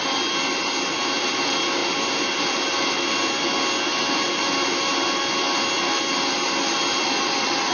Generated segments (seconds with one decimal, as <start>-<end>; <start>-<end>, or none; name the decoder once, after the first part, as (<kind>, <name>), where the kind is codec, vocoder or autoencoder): none